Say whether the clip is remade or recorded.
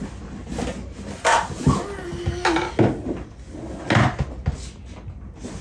recorded